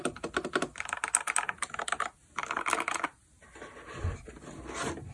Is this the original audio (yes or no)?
yes